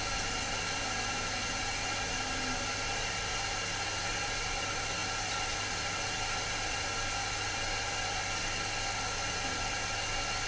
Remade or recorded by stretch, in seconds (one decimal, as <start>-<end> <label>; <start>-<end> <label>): 0.0-10.5 recorded